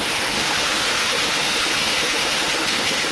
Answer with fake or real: fake